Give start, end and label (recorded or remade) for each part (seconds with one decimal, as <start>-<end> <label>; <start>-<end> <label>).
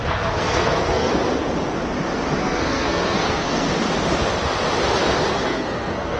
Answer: 0.0-1.1 remade; 1.1-2.4 recorded; 2.4-3.7 remade; 3.7-5.3 recorded; 5.3-6.2 remade